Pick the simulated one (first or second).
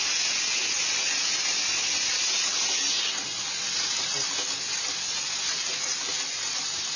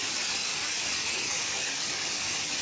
second